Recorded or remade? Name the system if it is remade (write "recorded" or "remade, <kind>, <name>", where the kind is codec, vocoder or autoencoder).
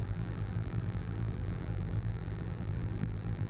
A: remade, vocoder, BigVGAN v2